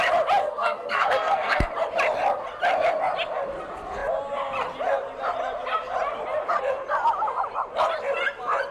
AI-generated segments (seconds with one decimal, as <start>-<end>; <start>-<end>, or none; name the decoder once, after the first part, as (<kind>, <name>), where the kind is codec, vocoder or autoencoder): 0.4-1.7 (codec, SNAC)